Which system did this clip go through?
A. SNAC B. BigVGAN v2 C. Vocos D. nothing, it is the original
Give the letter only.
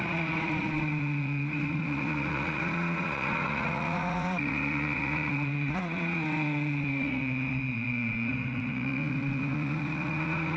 C